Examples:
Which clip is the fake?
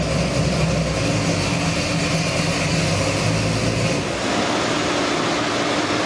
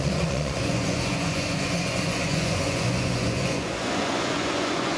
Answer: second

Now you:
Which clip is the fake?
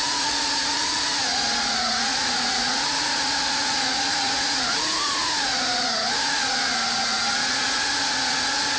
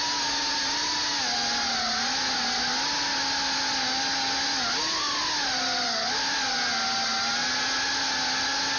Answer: first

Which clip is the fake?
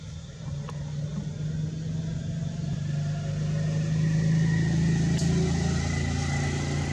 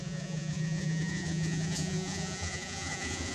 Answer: second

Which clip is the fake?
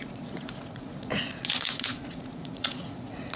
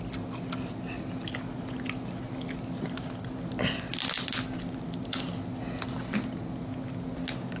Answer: first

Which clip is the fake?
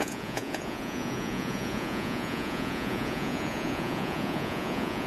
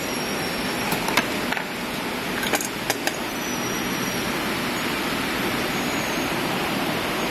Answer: first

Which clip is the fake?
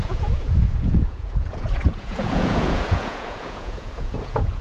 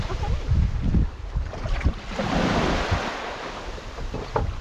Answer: first